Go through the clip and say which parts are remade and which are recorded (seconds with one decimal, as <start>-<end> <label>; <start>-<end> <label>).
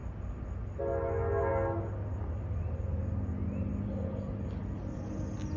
0.0-5.6 recorded